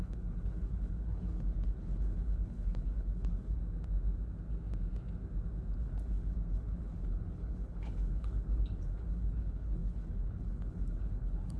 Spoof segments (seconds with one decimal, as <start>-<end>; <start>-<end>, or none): 0.0-3.6; 5.8-11.6